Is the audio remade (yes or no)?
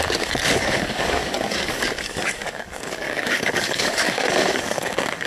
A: yes